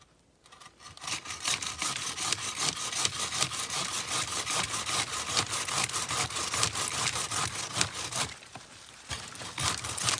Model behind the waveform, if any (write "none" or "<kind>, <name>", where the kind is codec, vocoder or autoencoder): none